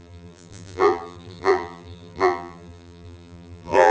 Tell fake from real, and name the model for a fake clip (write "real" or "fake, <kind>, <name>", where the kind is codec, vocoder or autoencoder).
fake, vocoder, BigVGAN v2